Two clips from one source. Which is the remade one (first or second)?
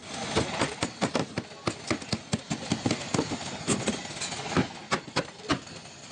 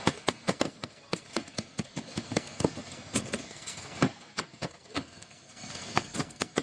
second